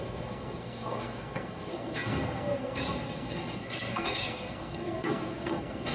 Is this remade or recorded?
remade